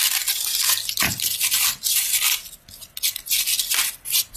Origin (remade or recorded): recorded